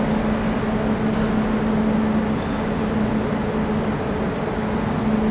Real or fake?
real